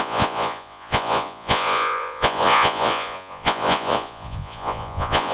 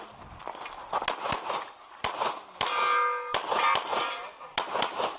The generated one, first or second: first